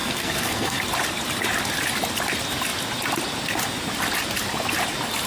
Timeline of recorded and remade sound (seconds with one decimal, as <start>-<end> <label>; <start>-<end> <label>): 0.0-0.8 remade; 0.8-5.3 recorded